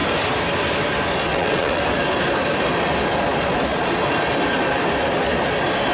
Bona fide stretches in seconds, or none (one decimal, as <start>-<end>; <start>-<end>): 0.0-1.3; 1.8-5.9